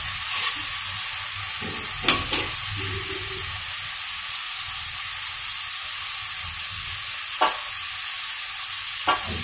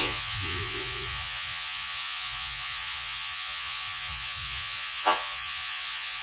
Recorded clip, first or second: first